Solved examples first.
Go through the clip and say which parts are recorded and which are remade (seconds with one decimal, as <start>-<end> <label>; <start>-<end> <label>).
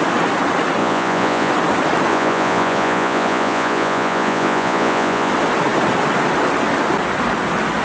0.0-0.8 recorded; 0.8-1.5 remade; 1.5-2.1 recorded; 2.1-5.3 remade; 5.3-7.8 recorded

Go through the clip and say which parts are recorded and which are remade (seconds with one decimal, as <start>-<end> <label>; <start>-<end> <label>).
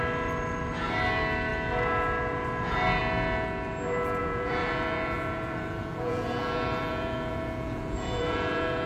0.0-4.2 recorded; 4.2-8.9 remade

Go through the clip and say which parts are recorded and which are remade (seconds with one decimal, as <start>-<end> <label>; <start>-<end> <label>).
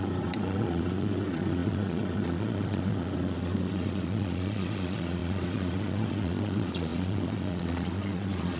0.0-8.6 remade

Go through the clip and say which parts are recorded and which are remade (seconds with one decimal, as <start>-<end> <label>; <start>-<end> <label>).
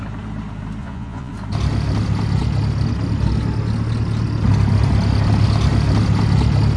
0.0-0.8 recorded; 0.8-1.3 remade; 1.3-6.8 recorded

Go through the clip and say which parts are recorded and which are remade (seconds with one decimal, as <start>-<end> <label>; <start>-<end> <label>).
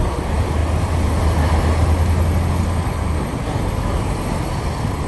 0.0-5.1 recorded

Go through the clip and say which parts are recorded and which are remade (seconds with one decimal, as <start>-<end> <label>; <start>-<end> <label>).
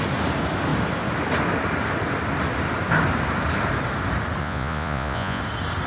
0.0-4.4 recorded; 4.4-5.4 remade; 5.4-5.9 recorded